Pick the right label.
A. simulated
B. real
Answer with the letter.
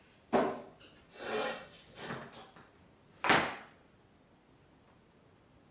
B